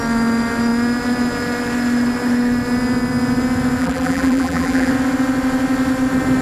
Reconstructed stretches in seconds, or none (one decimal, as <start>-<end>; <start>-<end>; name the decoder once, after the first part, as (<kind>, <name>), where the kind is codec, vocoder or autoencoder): 3.8-4.9 (vocoder, BigVGAN v2)